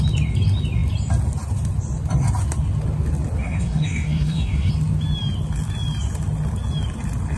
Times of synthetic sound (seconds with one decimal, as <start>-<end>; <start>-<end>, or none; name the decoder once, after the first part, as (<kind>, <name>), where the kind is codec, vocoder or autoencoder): 3.4-4.7 (codec, SNAC)